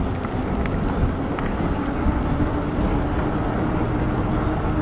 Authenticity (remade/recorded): recorded